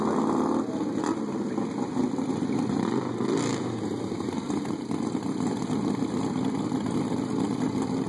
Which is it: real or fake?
real